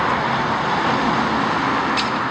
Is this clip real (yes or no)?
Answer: yes